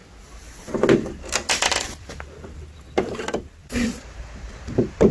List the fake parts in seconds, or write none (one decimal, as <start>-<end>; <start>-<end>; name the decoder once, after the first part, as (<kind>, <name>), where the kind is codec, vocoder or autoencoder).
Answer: 3.6-4.5 (vocoder, BigVGAN v2)